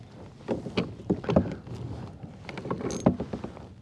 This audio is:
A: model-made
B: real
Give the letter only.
B